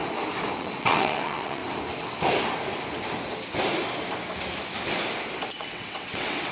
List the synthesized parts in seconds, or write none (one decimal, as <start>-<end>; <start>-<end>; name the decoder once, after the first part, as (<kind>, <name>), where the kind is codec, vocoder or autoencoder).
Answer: 0.6-1.6 (vocoder, WaveNeXt); 5.5-6.5

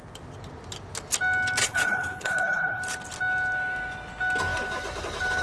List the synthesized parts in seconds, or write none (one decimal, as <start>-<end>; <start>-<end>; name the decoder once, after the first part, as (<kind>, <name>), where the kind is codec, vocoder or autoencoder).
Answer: 1.6-2.8 (codec, HILCodec)

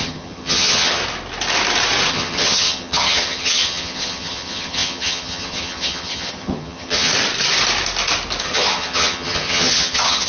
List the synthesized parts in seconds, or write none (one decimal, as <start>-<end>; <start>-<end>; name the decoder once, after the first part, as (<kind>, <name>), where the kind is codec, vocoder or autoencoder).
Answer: 0.0-1.0 (vocoder, HiFi-GAN); 2.1-7.1; 8.4-10.3